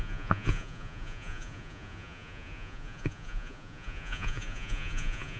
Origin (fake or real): fake